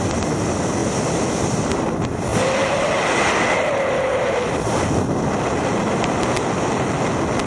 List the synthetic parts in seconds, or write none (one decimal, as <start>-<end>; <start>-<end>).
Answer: none